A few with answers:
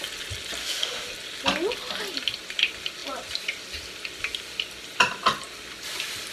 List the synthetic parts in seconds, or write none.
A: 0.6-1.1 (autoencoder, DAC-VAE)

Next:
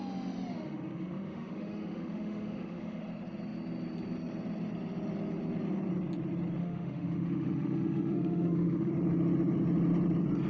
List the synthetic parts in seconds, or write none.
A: 0.5-3.0 (autoencoder, DAC-VAE); 6.6-8.9

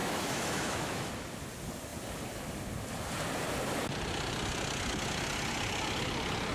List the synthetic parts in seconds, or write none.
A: 0.0-1.1 (autoencoder, DAC-VAE)

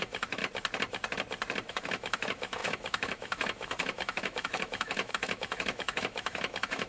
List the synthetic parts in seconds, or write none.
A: 0.0-0.4 (autoencoder, DAC-VAE); 1.7-6.9